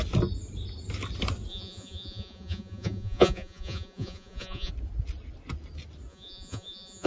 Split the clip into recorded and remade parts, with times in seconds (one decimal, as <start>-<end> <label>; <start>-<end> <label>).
0.0-1.5 recorded; 1.5-4.7 remade; 4.7-6.1 recorded; 6.1-7.1 remade